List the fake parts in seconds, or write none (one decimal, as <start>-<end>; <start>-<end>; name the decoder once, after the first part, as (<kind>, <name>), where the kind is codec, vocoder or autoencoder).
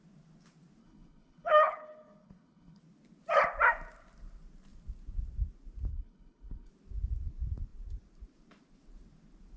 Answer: 0.8-2.8 (codec, HILCodec); 5.9-6.7